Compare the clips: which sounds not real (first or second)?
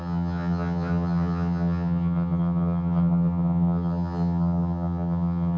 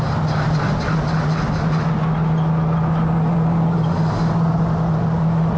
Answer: first